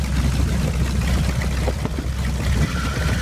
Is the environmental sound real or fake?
real